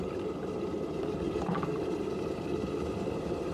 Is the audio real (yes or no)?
yes